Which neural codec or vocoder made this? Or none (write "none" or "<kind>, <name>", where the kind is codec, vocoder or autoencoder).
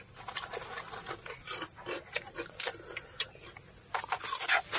none